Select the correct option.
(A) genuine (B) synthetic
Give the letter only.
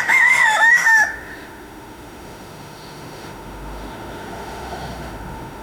B